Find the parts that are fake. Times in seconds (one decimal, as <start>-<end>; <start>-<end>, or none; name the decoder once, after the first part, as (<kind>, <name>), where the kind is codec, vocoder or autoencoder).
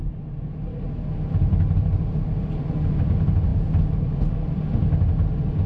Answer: none